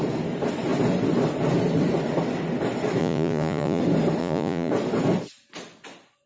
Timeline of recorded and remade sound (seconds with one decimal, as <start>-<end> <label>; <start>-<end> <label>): 0.0-3.0 recorded; 3.0-3.8 remade; 3.8-4.2 recorded; 4.2-4.7 remade; 4.7-6.3 recorded